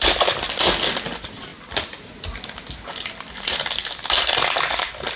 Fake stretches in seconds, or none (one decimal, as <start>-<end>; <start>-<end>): none